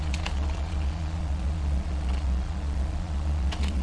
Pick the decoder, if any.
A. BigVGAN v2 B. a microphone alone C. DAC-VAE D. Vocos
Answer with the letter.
D